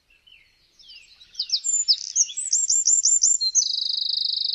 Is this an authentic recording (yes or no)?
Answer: yes